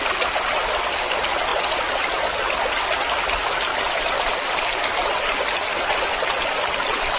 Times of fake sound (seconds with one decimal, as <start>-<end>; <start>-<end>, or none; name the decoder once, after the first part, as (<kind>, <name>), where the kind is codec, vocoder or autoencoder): 3.7-7.2 (vocoder, BigVGAN v2)